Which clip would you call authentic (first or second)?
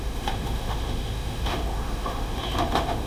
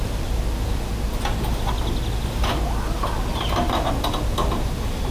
second